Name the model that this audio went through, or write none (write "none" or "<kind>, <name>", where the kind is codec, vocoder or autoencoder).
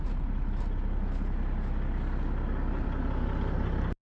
none